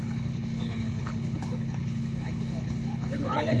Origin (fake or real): fake